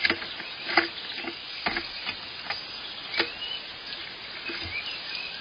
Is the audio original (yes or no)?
yes